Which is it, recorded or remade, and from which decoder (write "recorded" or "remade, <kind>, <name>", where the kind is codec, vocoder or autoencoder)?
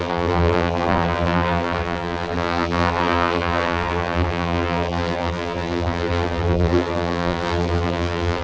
remade, vocoder, BigVGAN v2